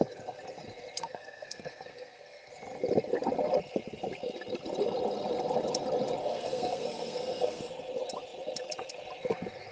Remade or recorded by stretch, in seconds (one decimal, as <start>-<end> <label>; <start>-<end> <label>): 0.0-1.0 recorded; 1.0-2.5 remade; 2.5-6.2 recorded; 6.2-7.6 remade; 7.6-9.7 recorded